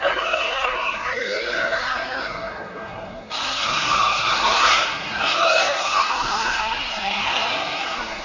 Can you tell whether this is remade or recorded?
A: remade